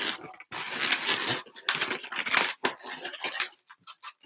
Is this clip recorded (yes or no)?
yes